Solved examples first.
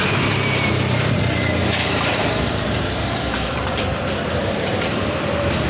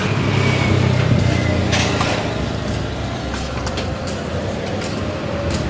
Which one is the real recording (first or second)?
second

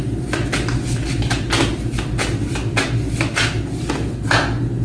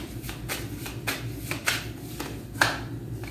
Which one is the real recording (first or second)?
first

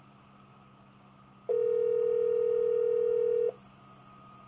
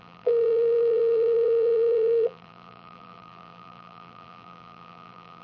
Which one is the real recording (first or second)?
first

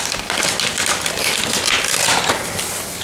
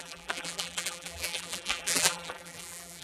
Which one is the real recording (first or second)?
first